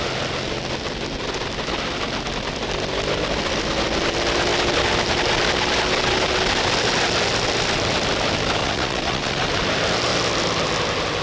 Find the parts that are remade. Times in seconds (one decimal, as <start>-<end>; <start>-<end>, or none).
8.6-9.5

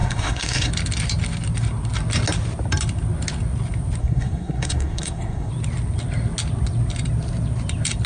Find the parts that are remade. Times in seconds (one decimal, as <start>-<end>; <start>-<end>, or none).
0.0-0.7; 4.0-5.5

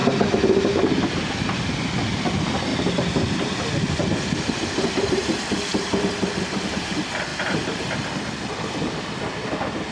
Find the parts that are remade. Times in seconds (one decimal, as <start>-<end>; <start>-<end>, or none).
none

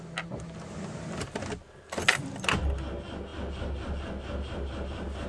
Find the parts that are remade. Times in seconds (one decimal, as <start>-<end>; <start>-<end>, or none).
none

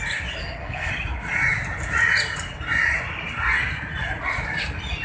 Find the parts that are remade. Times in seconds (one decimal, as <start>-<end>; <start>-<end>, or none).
0.4-0.9

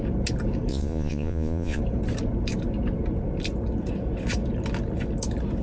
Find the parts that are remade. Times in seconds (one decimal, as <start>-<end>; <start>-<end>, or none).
0.7-1.8

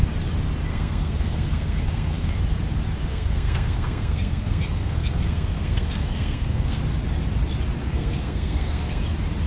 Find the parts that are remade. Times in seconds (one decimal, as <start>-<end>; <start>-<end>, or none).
0.7-2.4; 3.1-6.8; 7.8-9.0